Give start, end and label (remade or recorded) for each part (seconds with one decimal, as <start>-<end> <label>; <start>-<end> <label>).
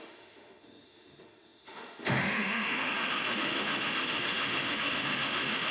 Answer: 0.0-5.7 remade